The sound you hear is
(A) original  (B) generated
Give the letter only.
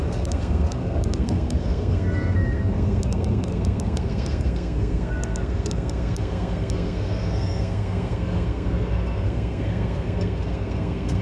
B